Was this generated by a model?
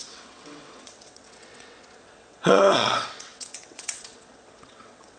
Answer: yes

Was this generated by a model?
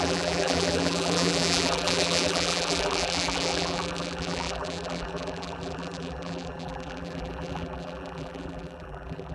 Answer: yes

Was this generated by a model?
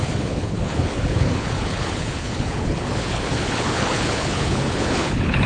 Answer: yes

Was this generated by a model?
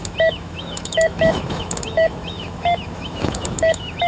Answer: yes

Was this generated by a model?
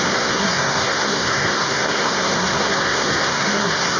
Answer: yes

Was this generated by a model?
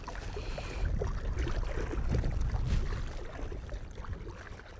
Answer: no